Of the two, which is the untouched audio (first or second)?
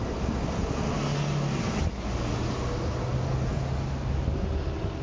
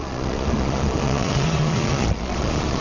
first